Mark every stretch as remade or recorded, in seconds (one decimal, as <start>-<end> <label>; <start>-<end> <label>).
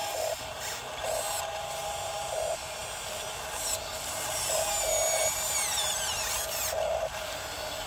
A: 0.0-7.9 recorded